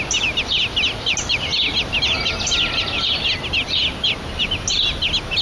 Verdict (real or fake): real